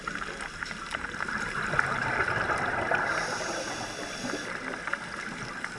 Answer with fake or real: real